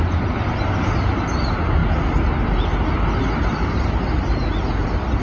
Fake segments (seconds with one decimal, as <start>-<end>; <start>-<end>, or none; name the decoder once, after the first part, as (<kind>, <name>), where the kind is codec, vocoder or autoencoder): none